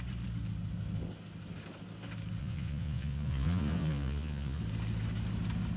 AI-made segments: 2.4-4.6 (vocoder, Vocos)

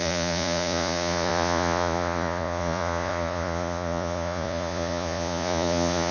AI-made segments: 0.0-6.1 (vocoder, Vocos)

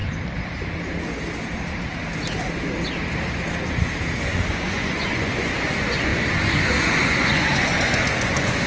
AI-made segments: 4.2-8.7 (vocoder, Vocos)

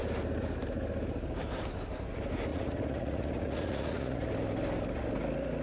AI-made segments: 2.5-4.3 (vocoder, Vocos)

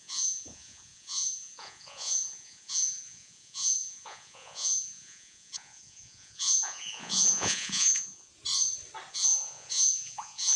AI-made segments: 0.0-8.3 (vocoder, Vocos); 9.1-10.6